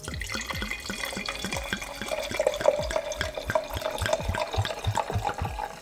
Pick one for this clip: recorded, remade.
recorded